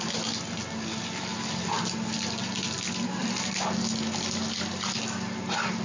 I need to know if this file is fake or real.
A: real